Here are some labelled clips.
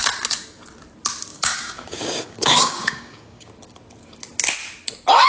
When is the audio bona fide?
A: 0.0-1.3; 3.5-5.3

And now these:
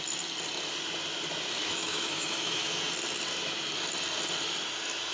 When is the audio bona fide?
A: 0.0-1.6; 2.8-5.1

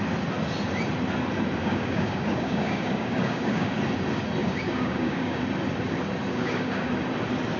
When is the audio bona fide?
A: 0.0-1.6; 3.8-4.4; 5.4-6.3; 6.9-7.6

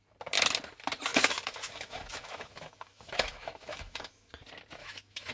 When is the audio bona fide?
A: 0.0-1.1; 4.3-4.8

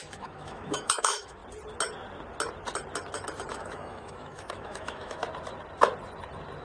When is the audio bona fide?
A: 1.4-3.5; 5.2-6.6